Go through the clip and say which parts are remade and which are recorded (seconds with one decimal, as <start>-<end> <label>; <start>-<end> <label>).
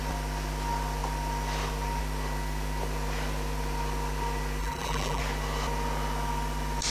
0.0-4.6 recorded; 4.6-5.2 remade; 5.2-6.9 recorded